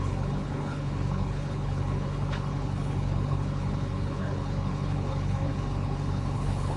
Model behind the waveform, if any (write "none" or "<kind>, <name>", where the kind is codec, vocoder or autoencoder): codec, HILCodec